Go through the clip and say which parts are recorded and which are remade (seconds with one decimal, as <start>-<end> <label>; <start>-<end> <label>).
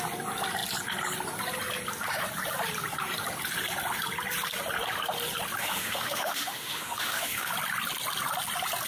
0.0-5.6 recorded; 5.6-7.5 remade; 7.5-8.9 recorded